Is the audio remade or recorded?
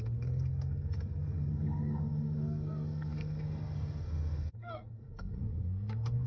remade